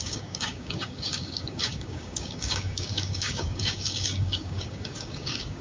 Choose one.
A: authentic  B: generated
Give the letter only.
B